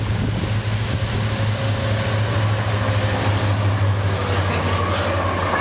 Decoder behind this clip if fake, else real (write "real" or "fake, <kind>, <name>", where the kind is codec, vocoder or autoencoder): real